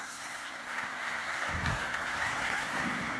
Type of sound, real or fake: fake